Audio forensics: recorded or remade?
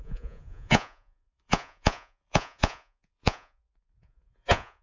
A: remade